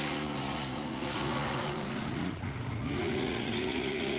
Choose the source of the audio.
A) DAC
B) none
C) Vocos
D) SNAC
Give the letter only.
C